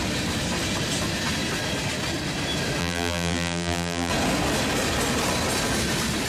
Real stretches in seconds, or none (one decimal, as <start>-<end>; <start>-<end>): 0.0-2.8; 4.1-6.3